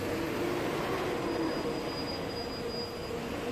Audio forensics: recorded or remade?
recorded